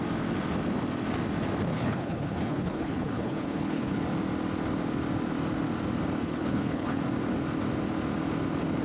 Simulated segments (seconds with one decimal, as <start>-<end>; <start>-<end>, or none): 1.7-4.0; 6.2-7.0